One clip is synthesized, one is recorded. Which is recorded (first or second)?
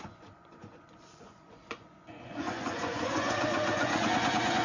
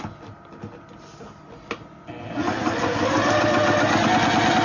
second